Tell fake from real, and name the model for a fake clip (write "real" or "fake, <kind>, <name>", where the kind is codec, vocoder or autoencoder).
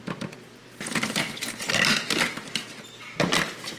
real